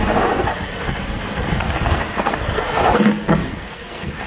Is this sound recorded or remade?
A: remade